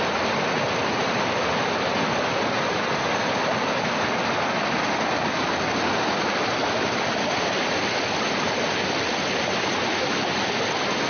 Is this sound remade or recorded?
recorded